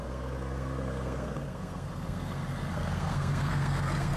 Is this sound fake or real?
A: fake